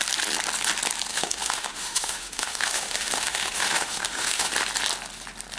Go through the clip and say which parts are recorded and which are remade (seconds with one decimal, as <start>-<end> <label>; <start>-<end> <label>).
0.0-1.1 recorded; 1.1-4.5 remade; 4.5-5.6 recorded